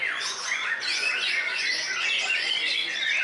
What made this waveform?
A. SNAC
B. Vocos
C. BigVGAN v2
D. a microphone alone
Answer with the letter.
B